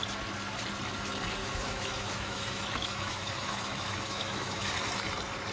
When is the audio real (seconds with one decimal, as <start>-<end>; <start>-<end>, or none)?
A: 0.0-1.4; 4.7-5.5